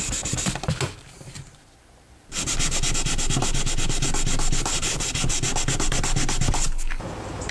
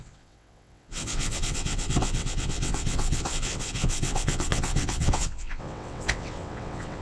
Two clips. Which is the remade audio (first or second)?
second